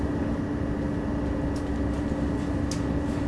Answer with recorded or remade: recorded